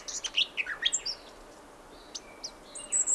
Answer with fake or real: real